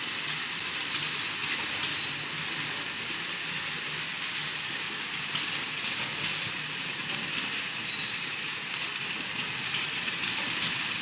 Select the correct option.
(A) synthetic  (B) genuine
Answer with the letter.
B